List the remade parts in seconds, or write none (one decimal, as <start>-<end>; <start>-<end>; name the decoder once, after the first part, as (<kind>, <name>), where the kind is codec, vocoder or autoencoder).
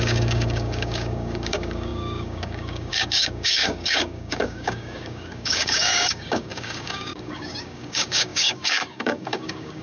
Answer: 0.0-9.8 (codec, DAC)